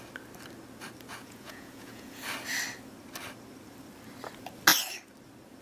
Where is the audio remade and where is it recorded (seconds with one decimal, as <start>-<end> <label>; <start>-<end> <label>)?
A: 0.0-1.2 recorded; 1.2-2.2 remade; 2.2-5.6 recorded